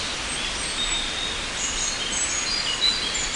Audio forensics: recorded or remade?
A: recorded